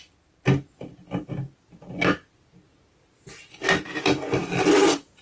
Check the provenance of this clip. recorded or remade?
recorded